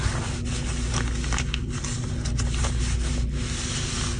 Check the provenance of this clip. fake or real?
real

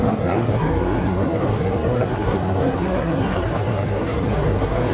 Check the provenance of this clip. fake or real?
fake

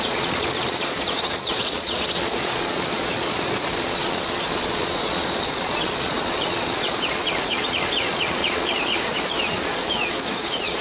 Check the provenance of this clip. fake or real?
fake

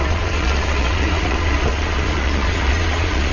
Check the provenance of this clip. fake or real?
fake